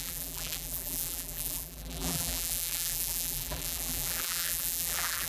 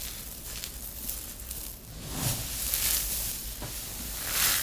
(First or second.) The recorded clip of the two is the second